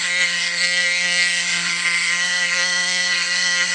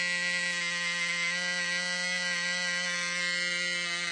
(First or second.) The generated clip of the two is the first